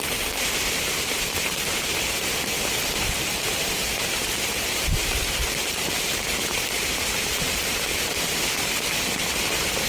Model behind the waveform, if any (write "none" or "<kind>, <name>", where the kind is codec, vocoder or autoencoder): vocoder, BigVGAN v2